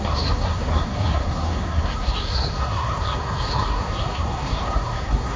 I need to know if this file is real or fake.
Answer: fake